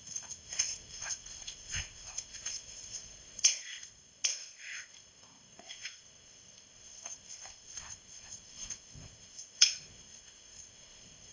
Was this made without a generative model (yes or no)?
no